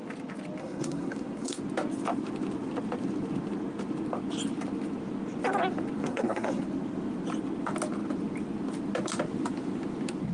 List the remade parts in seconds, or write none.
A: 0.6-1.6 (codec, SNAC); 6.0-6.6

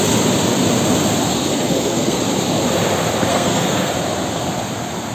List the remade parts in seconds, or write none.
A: 1.5-2.2 (codec, SNAC); 3.3-3.9

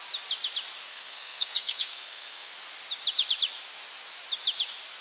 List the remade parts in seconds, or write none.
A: 0.8-2.5 (codec, SNAC)

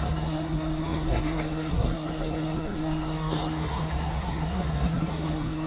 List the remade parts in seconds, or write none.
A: 0.0-5.7 (codec, SNAC)

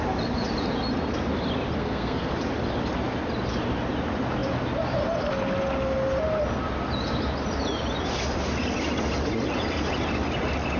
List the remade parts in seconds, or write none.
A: 1.8-2.3 (codec, SNAC)